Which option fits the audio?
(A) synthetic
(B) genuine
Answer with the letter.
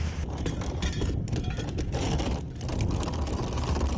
B